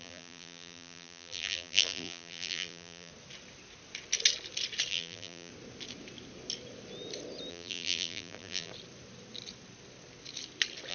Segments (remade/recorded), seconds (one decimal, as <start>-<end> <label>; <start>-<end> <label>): 0.0-3.1 remade; 3.1-4.9 recorded; 4.9-5.5 remade; 5.5-7.5 recorded; 7.5-8.7 remade; 8.7-10.9 recorded